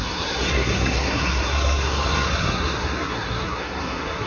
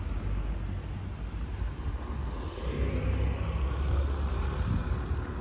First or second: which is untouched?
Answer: second